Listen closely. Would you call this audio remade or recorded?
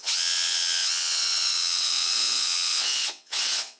remade